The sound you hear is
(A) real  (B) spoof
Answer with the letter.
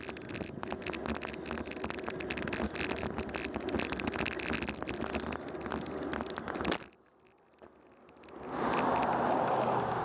A